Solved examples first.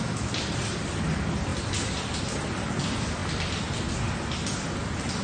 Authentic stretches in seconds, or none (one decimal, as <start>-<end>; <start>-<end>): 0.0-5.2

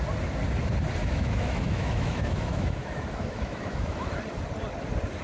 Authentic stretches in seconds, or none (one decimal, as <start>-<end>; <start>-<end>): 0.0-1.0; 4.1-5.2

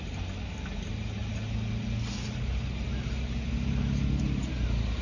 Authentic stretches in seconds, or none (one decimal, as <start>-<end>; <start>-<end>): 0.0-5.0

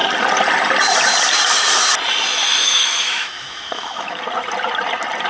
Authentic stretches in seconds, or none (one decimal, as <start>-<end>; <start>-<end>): 0.0-2.6; 4.2-5.3